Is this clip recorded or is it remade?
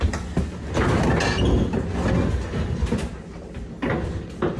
recorded